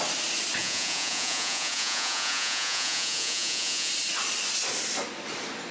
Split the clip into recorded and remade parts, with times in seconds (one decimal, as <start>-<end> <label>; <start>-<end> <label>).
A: 0.0-0.6 recorded; 0.6-3.9 remade; 3.9-5.7 recorded